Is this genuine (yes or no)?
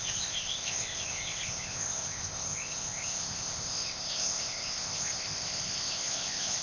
no